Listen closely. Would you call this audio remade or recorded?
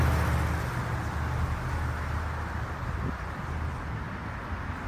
recorded